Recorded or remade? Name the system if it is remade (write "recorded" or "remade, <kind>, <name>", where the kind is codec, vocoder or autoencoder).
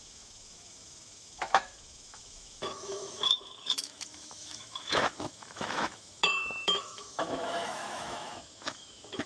remade, autoencoder, DAC-VAE